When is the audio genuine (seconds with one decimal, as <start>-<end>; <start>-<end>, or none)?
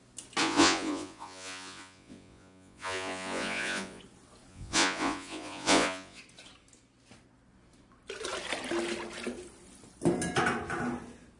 0.0-0.4; 4.0-4.5; 6.2-11.4